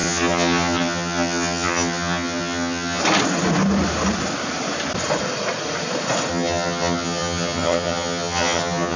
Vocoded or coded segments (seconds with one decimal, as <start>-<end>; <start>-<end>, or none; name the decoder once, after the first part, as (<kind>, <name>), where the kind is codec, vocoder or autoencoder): 0.0-3.0 (vocoder, HiFi-GAN); 6.3-9.0